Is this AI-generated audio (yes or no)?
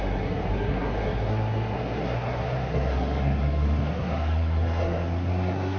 yes